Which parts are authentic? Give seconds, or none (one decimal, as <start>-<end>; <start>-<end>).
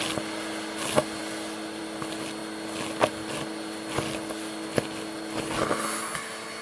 0.0-6.6